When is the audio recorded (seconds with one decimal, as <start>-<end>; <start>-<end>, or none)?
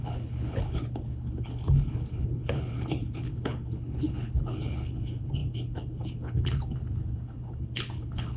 none